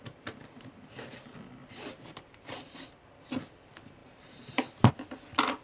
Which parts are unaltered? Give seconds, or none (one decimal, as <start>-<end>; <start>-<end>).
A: 0.0-1.6; 2.8-4.0; 4.9-5.6